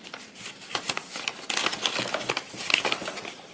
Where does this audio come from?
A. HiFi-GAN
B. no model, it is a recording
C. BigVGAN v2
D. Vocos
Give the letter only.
B